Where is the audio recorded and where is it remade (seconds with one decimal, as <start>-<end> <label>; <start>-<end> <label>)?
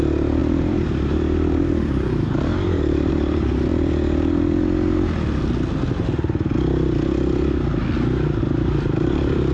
0.0-3.7 remade; 3.7-8.4 recorded; 8.4-9.5 remade